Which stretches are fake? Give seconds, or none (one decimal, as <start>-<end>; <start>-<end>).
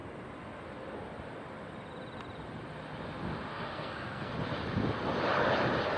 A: 3.5-4.3